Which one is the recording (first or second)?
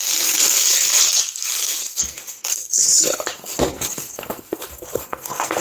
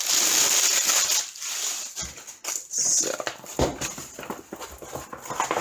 second